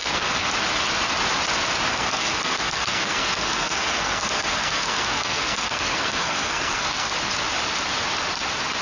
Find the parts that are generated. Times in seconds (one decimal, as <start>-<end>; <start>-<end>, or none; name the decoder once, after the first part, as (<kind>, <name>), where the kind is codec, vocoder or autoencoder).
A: 0.0-0.5 (codec, SNAC); 1.9-7.1